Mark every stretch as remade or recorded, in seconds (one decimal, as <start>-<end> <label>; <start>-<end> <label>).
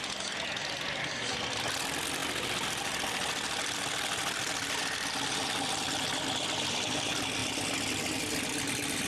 0.0-9.1 recorded